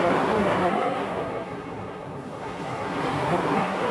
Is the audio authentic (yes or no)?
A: no